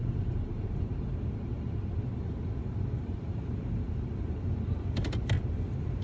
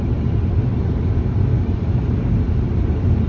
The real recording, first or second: second